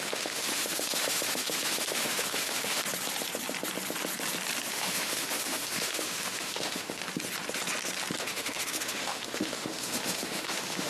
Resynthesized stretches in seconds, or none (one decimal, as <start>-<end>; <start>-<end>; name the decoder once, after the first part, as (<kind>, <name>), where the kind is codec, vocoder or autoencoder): 0.0-2.8 (autoencoder, DAC-VAE); 4.7-7.0; 8.2-10.9